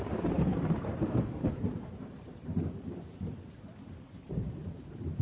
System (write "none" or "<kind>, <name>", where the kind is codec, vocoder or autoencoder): vocoder, BigVGAN v2